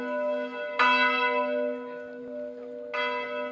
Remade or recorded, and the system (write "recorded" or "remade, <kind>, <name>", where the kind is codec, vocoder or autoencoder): recorded